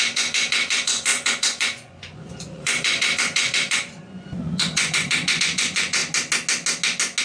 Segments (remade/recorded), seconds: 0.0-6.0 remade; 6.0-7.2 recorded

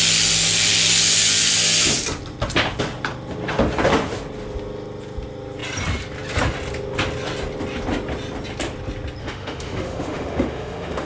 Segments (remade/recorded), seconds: 0.0-9.2 recorded; 9.2-11.1 remade

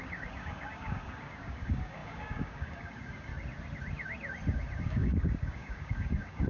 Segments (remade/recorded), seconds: 0.0-3.3 remade; 3.3-4.8 recorded; 4.8-6.5 remade